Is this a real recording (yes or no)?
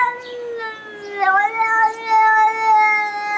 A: yes